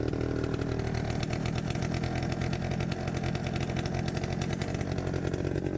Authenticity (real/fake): real